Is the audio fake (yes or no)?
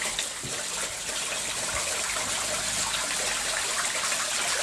no